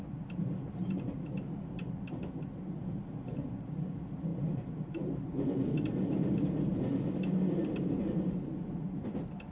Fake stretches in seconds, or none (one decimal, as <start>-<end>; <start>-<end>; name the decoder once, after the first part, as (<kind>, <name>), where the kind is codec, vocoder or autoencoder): none